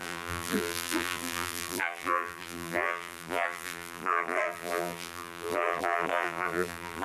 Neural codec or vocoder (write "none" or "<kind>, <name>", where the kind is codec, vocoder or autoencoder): vocoder, BigVGAN v2